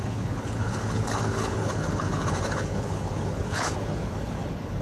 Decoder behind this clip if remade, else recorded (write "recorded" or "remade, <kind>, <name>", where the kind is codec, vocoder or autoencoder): remade, codec, HILCodec